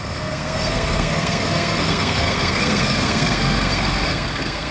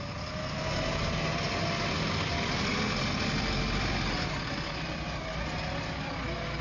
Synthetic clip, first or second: first